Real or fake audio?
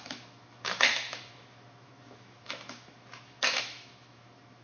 fake